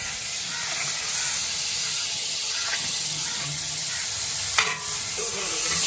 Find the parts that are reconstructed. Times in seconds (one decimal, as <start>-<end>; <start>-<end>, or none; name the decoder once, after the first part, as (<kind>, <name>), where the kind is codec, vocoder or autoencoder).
1.9-3.9 (vocoder, HiFi-GAN)